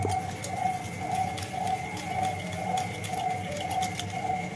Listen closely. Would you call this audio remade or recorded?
recorded